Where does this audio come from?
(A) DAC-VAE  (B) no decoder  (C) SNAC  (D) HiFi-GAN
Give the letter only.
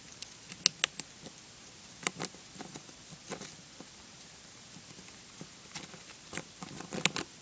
B